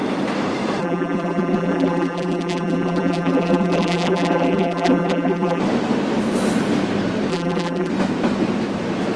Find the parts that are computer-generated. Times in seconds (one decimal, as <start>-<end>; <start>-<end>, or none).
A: 0.8-5.6; 7.3-7.9